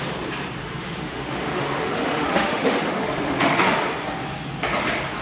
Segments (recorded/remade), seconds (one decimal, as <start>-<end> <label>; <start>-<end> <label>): 0.0-0.6 recorded; 0.6-3.7 remade; 3.7-5.2 recorded